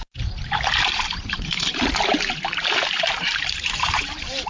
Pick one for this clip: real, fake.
fake